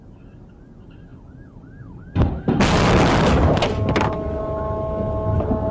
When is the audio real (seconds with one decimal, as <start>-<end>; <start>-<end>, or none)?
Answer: 0.0-5.7